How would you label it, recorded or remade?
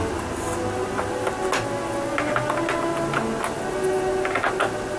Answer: recorded